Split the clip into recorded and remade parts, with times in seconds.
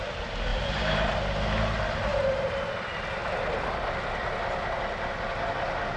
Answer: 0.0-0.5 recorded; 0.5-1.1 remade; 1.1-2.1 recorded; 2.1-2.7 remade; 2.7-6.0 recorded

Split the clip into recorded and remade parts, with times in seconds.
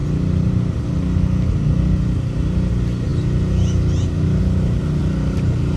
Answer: 0.0-5.8 recorded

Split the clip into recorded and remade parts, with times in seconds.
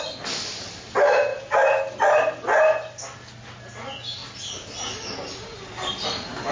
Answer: 0.0-6.5 recorded